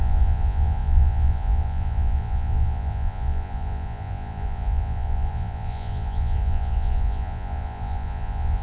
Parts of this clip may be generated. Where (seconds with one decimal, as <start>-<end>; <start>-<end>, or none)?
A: 0.0-8.6